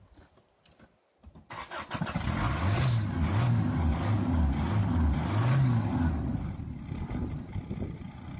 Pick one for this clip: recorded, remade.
recorded